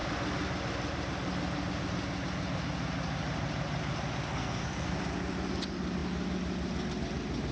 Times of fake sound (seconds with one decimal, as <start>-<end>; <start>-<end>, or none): 4.4-5.0